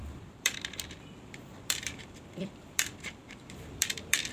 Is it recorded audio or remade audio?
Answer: remade